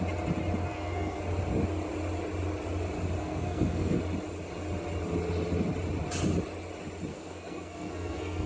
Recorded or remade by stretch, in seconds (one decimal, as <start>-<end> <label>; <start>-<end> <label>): 0.0-0.6 recorded; 0.6-1.2 remade; 1.2-3.2 recorded; 3.2-4.0 remade; 4.0-7.1 recorded; 7.1-8.5 remade